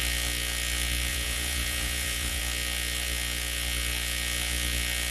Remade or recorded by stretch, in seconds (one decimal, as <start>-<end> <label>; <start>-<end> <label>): 0.0-1.1 recorded; 1.1-2.4 remade; 2.4-5.1 recorded